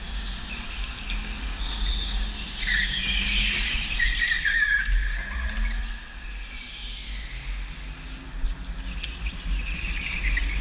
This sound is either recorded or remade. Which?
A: recorded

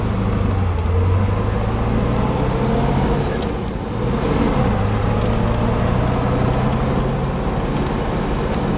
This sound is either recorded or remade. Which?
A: recorded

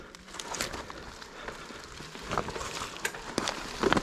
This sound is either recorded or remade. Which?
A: recorded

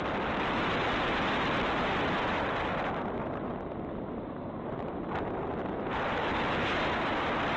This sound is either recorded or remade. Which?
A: recorded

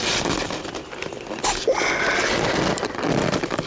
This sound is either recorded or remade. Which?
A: recorded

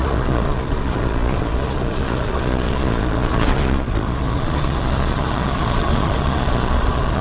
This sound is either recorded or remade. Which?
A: remade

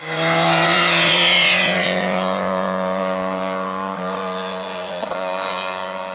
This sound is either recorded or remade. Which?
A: remade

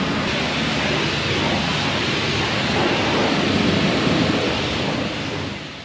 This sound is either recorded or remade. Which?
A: recorded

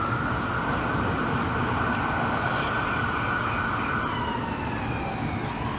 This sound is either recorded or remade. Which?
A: recorded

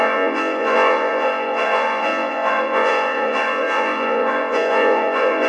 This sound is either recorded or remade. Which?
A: remade